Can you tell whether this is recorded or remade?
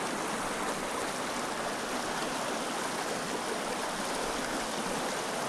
recorded